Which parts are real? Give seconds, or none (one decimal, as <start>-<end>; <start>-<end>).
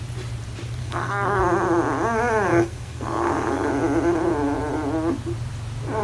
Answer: 0.0-0.8; 1.4-2.5; 3.7-6.0